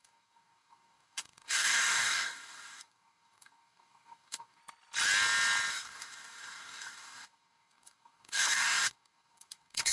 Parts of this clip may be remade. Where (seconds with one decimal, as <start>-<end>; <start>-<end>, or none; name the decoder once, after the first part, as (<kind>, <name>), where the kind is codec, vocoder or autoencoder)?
0.0-4.6 (codec, DAC); 5.7-9.9